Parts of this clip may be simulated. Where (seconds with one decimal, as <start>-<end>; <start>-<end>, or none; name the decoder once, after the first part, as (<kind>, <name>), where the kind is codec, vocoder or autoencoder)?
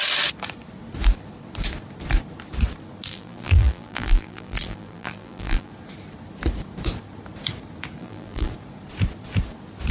3.1-5.7 (vocoder, BigVGAN v2); 8.0-8.5